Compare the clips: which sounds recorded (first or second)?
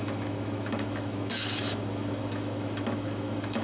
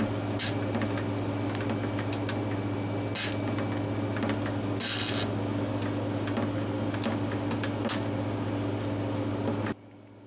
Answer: second